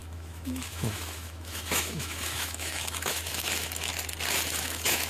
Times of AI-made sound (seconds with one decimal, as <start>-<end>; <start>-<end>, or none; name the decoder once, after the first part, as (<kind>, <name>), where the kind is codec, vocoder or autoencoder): 0.0-3.9 (autoencoder, DAC-VAE); 4.6-5.1